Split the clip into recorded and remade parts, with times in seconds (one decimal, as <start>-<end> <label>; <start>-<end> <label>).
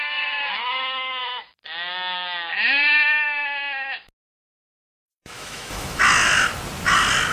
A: 0.0-1.2 remade; 1.2-4.9 recorded; 4.9-6.0 remade; 6.0-7.3 recorded